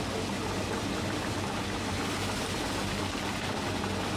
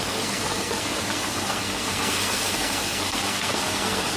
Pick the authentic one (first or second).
first